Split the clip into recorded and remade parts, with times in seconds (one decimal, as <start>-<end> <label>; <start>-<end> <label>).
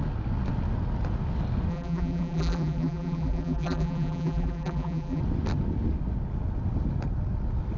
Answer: 0.0-1.7 recorded; 1.7-5.2 remade; 5.2-7.8 recorded